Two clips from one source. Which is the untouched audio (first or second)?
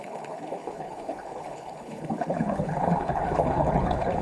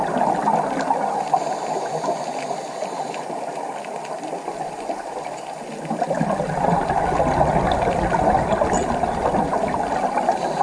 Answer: second